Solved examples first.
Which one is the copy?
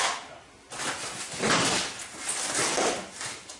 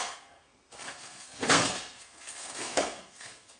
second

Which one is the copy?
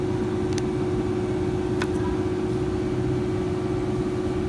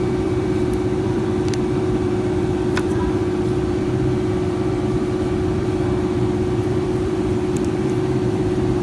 second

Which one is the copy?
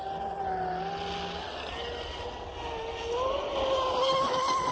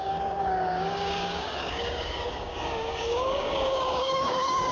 second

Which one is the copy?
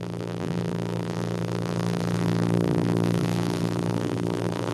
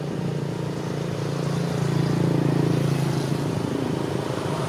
first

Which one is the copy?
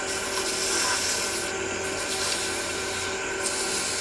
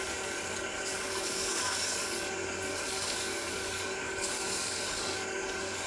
second